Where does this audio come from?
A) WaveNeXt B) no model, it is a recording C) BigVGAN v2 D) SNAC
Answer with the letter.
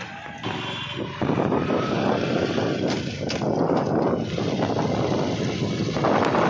B